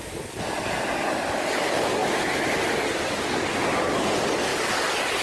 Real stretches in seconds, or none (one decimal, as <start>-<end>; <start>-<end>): 0.0-5.2